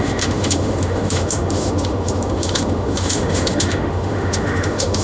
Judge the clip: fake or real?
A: fake